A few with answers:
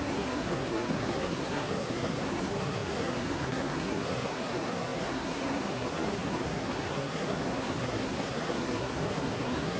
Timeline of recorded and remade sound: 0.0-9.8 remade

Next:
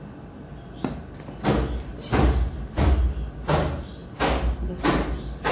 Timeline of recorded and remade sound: 0.0-1.9 recorded; 1.9-2.9 remade; 2.9-4.0 recorded; 4.0-5.5 remade

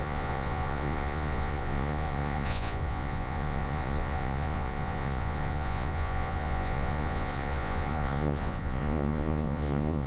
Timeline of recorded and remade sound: 0.0-10.1 remade

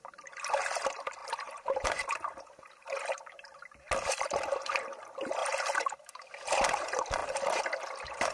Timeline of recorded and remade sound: 0.0-8.3 remade

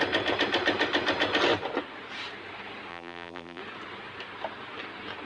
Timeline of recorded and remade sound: 0.0-2.9 recorded; 2.9-3.6 remade; 3.6-5.3 recorded

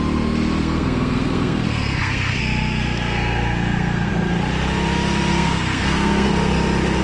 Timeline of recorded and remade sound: 0.0-0.6 recorded; 0.6-4.1 remade; 4.1-5.3 recorded; 5.3-6.3 remade; 6.3-7.0 recorded